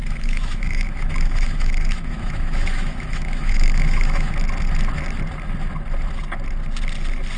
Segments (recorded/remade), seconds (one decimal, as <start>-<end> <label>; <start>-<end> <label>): 0.0-4.3 remade; 4.3-7.4 recorded